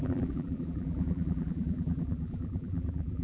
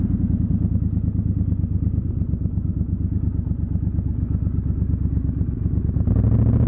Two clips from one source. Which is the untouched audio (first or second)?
second